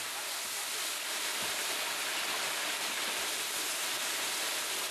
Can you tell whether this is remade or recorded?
recorded